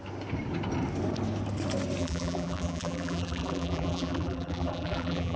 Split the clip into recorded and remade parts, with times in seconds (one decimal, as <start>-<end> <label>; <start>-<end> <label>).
0.0-2.0 recorded; 2.0-5.4 remade